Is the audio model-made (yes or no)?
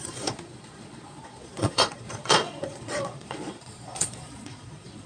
yes